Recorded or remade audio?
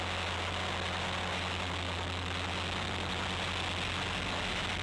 recorded